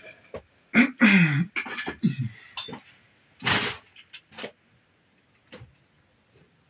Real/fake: real